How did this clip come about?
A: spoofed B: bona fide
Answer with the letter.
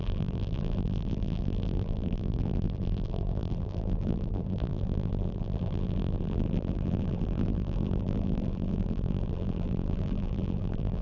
A